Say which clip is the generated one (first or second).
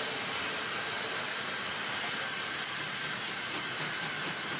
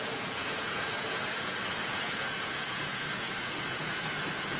second